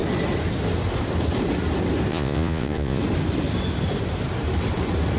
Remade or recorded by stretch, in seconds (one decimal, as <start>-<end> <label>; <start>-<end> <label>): 0.0-2.1 recorded; 2.1-3.0 remade; 3.0-5.2 recorded